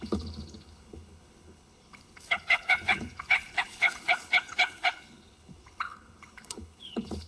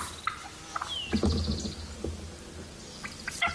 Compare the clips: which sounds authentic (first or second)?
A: second